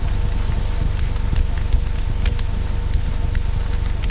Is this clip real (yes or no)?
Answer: yes